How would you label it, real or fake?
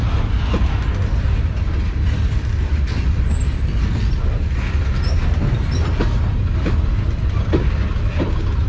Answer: real